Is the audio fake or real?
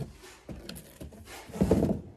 real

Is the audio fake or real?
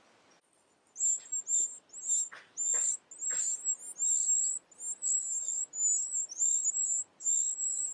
real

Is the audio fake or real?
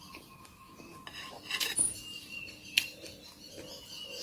real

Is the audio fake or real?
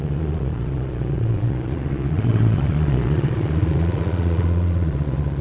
fake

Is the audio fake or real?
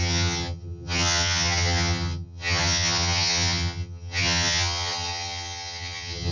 fake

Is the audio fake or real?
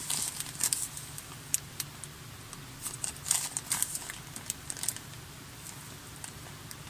real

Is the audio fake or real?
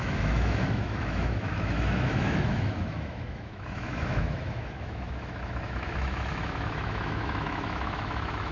fake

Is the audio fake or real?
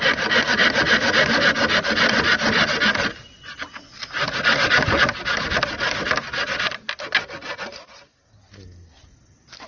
real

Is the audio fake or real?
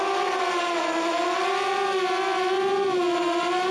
real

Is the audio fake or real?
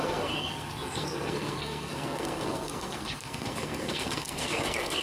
fake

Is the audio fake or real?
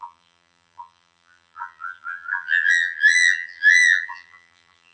fake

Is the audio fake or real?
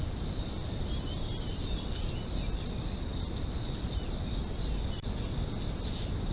real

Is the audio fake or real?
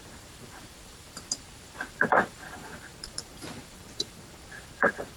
fake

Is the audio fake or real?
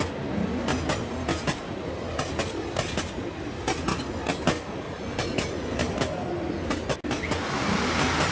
real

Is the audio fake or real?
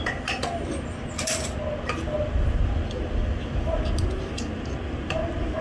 real